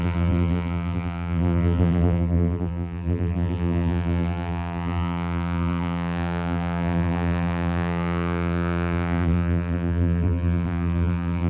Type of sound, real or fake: fake